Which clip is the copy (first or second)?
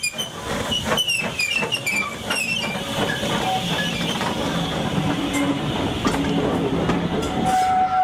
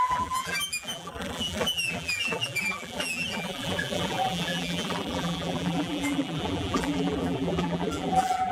second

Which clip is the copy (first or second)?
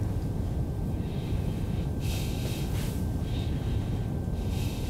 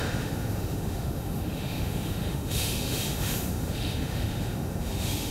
second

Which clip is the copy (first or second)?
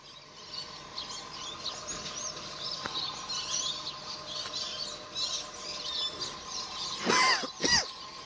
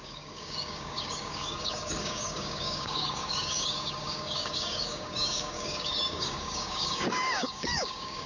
second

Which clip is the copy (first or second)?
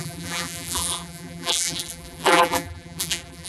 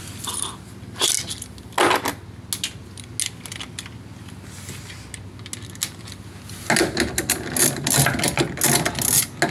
first